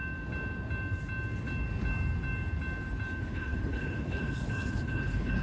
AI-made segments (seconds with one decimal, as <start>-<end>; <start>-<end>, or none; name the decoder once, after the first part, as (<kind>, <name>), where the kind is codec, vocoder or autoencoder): 3.2-5.4 (codec, HILCodec)